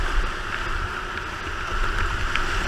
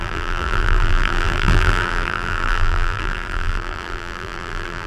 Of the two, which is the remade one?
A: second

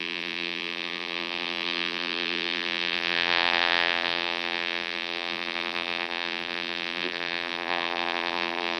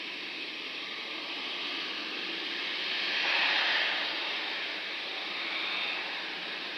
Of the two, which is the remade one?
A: first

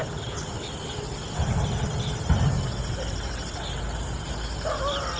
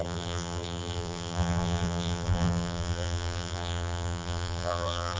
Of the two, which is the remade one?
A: second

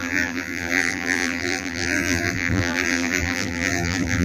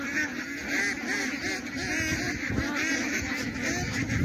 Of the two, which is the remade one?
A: first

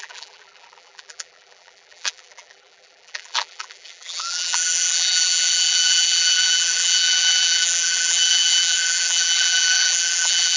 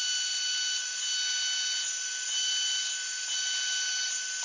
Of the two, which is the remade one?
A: first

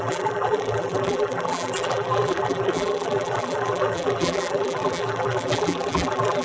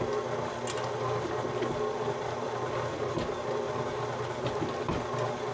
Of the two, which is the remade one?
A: first